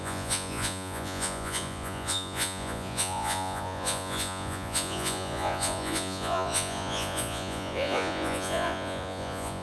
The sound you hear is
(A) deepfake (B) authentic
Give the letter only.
A